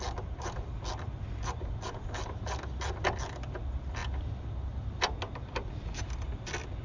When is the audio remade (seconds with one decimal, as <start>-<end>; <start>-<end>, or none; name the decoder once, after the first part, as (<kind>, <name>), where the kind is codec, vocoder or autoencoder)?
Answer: none